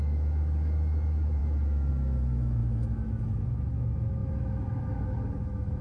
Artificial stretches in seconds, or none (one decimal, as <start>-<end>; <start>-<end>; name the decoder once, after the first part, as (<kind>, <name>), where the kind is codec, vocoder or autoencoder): 0.0-5.8 (autoencoder, DAC-VAE)